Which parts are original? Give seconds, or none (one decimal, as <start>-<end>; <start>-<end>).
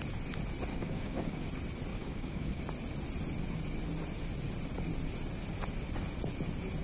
0.0-0.7; 1.5-1.9; 2.6-6.8